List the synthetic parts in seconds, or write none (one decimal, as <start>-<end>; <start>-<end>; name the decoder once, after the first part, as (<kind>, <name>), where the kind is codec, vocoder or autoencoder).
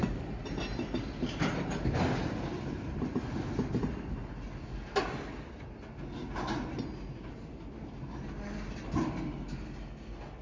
none